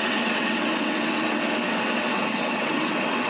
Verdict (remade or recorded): remade